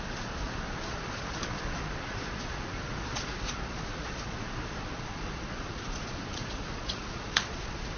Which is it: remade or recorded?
remade